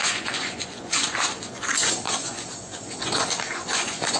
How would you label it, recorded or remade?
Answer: remade